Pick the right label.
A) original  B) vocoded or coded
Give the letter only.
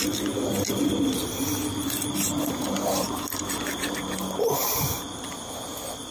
A